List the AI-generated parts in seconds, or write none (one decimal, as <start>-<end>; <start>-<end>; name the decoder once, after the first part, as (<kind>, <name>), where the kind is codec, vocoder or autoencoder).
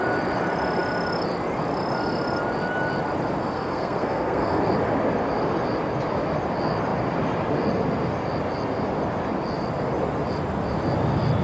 3.4-4.6 (codec, SNAC)